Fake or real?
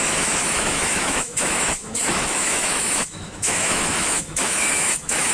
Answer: fake